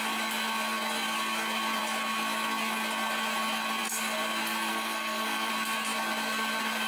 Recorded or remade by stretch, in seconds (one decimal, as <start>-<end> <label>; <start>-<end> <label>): 0.0-4.7 recorded; 4.7-5.5 remade; 5.5-6.9 recorded